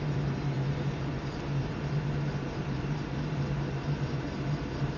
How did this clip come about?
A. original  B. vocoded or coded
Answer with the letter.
B